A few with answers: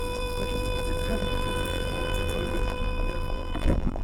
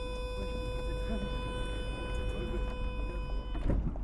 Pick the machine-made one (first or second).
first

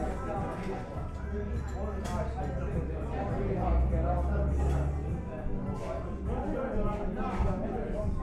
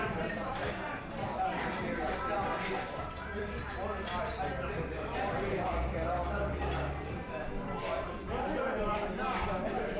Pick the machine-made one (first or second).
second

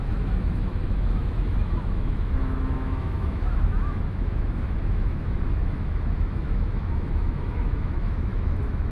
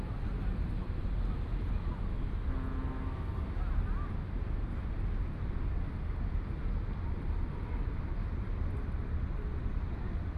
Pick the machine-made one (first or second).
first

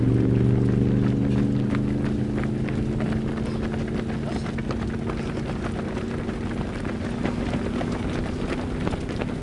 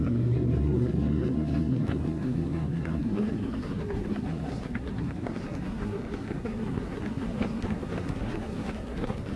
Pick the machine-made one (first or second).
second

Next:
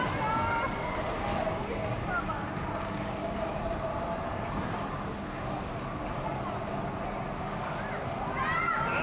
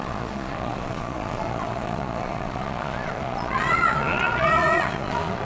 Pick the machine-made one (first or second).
second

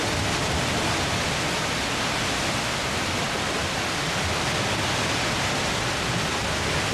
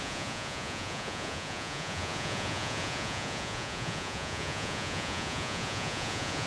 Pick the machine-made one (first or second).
second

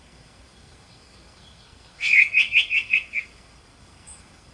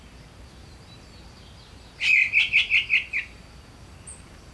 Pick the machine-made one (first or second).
first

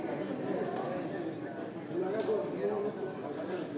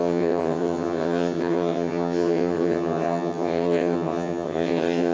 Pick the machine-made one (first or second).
second